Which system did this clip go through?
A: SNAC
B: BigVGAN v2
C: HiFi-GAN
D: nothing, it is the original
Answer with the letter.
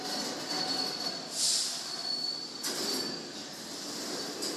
D